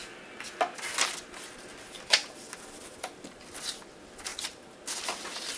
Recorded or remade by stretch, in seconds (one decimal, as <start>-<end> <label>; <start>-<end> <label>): 0.0-5.6 recorded